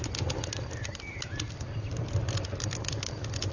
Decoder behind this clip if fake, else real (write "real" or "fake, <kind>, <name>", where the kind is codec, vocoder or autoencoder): real